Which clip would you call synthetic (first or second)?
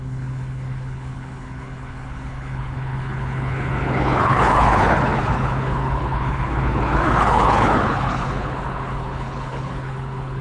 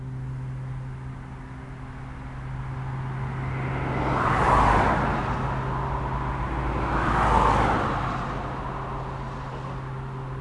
first